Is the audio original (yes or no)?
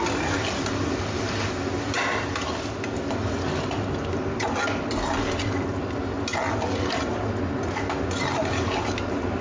yes